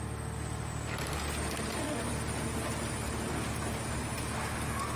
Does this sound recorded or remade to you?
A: recorded